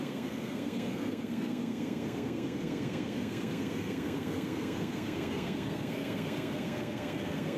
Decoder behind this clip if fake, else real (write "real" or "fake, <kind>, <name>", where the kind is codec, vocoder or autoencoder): fake, codec, SNAC